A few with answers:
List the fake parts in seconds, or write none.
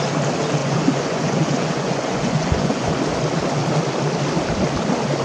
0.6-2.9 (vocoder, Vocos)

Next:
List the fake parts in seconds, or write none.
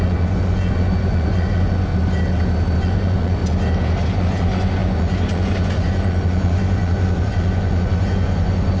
0.0-1.9 (vocoder, Vocos); 2.8-3.4; 4.1-8.8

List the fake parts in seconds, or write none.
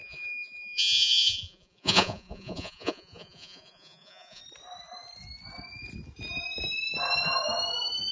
0.0-4.4 (vocoder, Vocos)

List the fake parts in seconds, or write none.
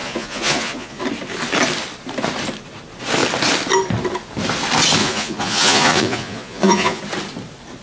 0.0-1.0 (vocoder, Vocos); 5.0-7.0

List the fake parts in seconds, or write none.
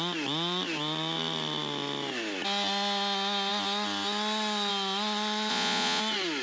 5.5-6.0 (vocoder, Vocos)